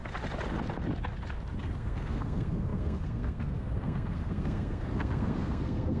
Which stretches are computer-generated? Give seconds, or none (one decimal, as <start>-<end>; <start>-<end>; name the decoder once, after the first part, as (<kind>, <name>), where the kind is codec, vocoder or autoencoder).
1.6-6.0 (codec, SNAC)